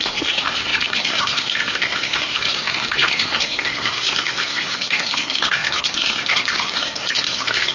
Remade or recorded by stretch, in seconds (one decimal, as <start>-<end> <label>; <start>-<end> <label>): 0.0-7.7 remade